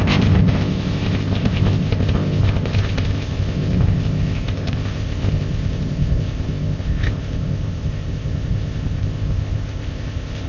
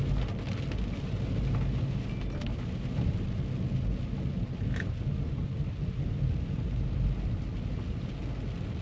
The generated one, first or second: first